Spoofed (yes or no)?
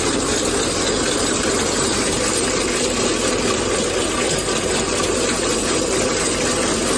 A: no